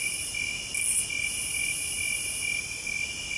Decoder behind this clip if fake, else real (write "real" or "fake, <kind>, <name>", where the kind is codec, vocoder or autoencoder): real